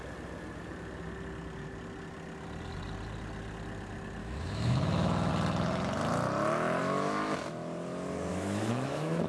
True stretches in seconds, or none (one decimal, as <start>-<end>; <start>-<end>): 0.0-4.2; 5.3-6.8; 7.4-8.3